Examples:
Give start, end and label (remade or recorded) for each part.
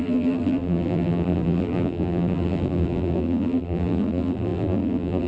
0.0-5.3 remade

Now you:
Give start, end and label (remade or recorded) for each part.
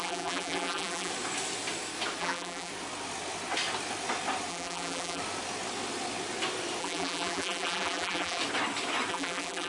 0.0-1.1 remade; 1.1-2.2 recorded; 2.2-2.7 remade; 2.7-4.5 recorded; 4.5-5.2 remade; 5.2-6.8 recorded; 6.8-8.4 remade; 8.4-9.1 recorded; 9.1-9.7 remade